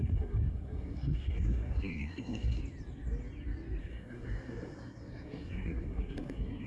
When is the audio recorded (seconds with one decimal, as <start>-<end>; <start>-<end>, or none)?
2.6-3.8